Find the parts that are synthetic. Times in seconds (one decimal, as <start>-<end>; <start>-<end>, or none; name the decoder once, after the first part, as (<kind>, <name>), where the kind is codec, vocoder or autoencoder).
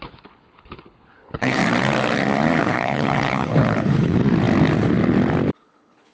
0.0-1.6 (codec, HILCodec); 2.6-4.2; 5.5-6.1